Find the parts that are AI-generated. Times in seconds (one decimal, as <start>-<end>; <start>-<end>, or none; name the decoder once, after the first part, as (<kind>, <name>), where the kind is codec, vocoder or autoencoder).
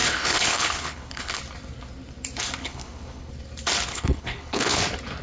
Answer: 0.0-1.4 (codec, HILCodec); 2.6-3.3; 3.9-4.8